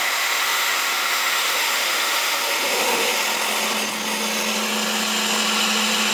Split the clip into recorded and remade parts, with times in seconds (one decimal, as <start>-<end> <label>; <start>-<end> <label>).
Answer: 0.0-3.1 remade; 3.1-6.1 recorded